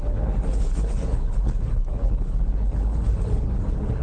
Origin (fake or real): fake